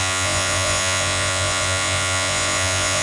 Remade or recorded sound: remade